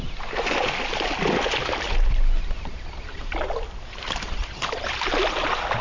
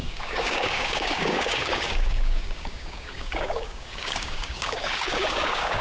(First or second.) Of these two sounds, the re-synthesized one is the second